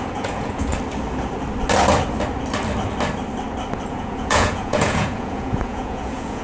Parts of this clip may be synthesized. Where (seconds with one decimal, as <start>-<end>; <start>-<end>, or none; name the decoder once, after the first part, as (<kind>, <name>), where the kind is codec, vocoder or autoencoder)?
0.0-0.7 (vocoder, Vocos); 3.9-6.4